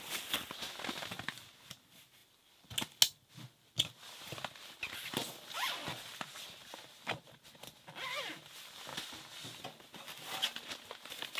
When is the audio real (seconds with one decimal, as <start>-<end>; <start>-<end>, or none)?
0.0-11.4